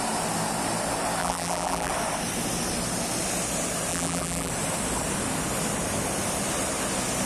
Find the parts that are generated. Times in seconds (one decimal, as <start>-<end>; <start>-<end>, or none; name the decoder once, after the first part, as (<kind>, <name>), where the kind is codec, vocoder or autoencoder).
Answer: 1.2-1.9 (vocoder, BigVGAN v2); 3.9-4.5